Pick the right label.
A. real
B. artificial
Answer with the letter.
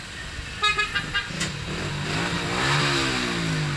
A